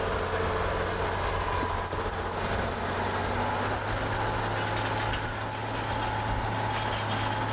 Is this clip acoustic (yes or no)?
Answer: yes